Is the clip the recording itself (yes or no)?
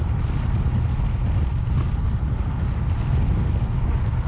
yes